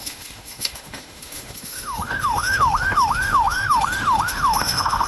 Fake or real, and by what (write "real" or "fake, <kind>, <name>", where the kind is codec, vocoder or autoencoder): fake, autoencoder, DAC-VAE